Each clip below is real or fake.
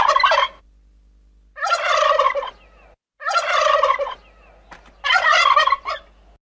real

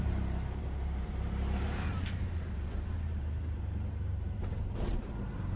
fake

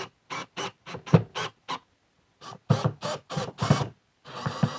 real